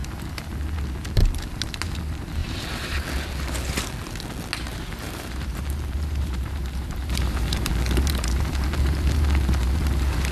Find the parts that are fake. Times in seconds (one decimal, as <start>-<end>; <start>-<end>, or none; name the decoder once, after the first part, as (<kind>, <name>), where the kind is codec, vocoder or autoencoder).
2.4-3.0 (vocoder, BigVGAN v2); 4.7-7.7